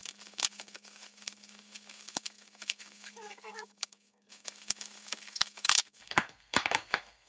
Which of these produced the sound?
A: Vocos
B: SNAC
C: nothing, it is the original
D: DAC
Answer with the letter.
B